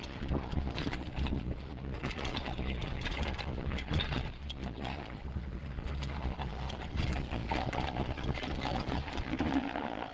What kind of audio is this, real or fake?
fake